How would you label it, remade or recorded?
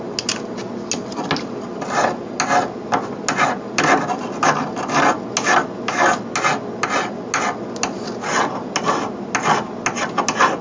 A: recorded